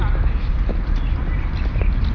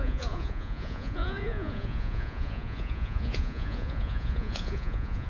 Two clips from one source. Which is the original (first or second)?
first